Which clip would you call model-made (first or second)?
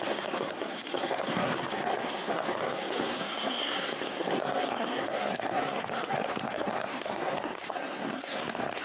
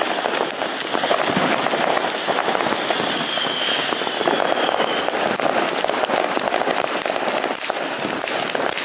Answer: first